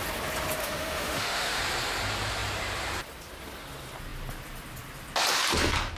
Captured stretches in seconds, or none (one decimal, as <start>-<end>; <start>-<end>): 0.0-0.6; 1.6-6.0